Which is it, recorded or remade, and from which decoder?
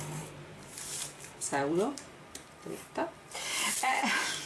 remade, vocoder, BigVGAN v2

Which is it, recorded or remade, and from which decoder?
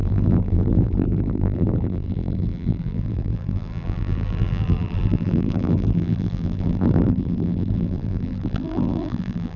remade, vocoder, BigVGAN v2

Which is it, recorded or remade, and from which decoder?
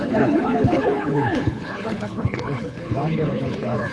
remade, codec, HILCodec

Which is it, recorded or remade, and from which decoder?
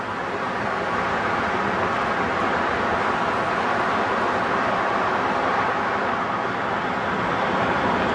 recorded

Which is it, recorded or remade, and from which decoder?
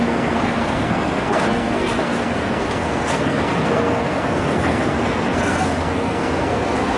remade, codec, SNAC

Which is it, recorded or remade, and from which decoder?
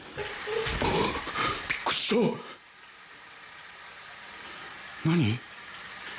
recorded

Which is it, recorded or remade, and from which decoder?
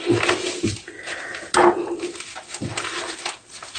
recorded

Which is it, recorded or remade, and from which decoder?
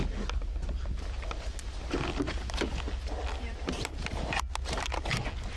recorded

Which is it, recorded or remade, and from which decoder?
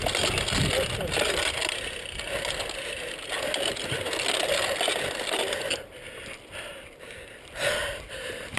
recorded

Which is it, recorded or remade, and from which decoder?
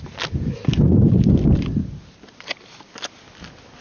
recorded